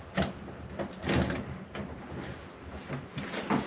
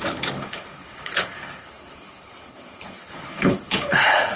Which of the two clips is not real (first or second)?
second